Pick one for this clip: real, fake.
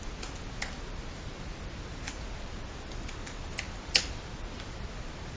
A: real